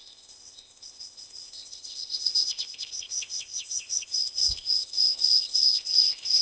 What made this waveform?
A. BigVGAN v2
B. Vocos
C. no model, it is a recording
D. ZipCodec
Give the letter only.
D